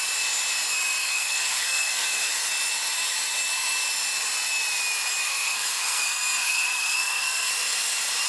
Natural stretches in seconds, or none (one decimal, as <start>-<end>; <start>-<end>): 0.0-1.0; 2.3-5.2; 7.5-8.3